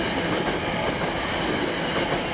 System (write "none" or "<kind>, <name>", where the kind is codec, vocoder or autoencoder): none